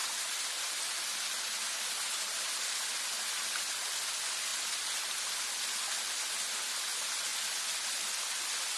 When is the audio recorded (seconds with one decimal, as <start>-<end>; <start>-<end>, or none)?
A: 0.0-8.8